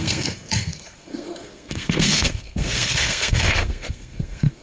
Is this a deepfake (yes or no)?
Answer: yes